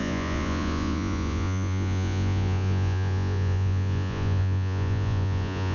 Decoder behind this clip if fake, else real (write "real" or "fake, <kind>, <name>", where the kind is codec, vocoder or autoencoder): fake, vocoder, Vocos